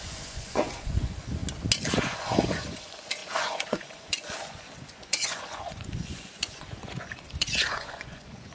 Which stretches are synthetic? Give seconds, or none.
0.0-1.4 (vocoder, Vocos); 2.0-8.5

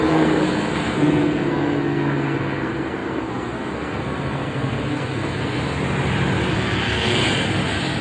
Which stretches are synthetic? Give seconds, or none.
0.0-5.6 (codec, SNAC); 6.5-7.2